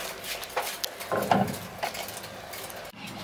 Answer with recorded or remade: recorded